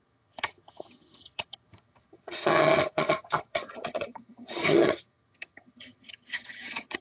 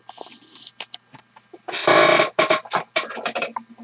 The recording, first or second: second